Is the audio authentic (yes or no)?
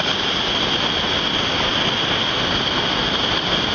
yes